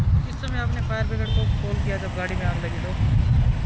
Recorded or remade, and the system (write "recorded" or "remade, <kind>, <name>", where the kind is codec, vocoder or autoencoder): recorded